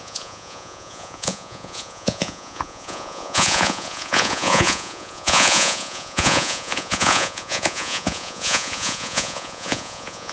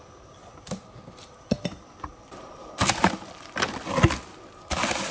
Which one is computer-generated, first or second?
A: first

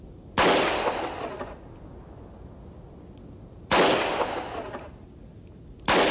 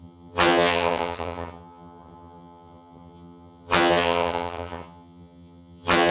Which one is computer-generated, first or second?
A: second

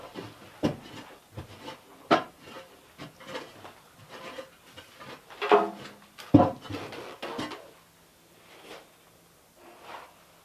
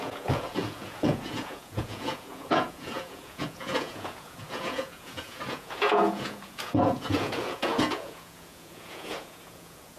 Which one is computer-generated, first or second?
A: second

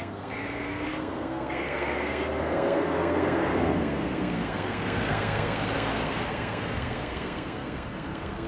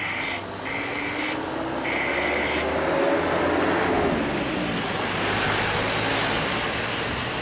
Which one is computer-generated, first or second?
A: first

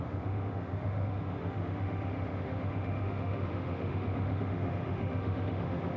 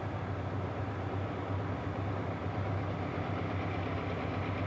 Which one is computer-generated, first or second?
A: first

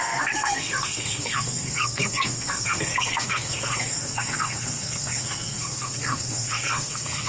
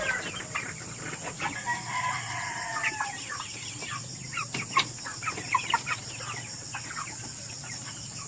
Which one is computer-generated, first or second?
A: first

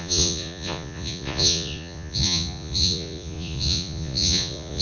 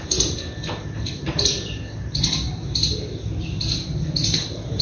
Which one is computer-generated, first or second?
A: first